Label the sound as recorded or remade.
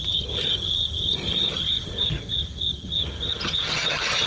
remade